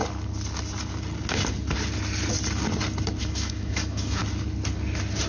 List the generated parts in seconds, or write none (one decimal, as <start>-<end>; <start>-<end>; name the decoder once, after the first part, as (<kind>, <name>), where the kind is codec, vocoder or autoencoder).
3.2-4.2 (autoencoder, DAC-VAE)